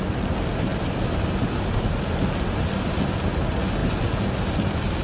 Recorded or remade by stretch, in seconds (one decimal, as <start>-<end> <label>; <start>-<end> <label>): 0.0-5.0 recorded